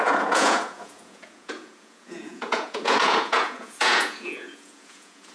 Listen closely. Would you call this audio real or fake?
fake